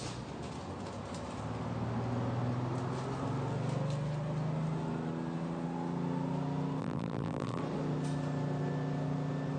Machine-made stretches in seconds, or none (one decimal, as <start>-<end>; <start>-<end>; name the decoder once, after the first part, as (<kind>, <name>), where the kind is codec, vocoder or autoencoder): 6.8-7.6 (vocoder, BigVGAN v2)